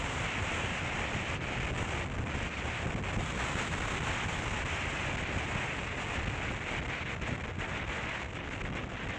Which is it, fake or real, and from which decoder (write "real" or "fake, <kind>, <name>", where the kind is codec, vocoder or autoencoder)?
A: real